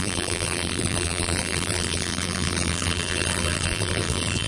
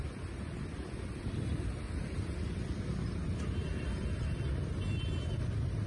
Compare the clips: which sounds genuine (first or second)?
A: second